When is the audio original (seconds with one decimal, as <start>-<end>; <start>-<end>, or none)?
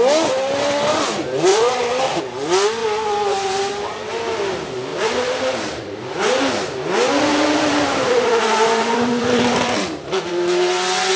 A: 0.0-1.5; 2.2-2.8; 4.1-4.9; 5.8-7.3; 10.3-11.2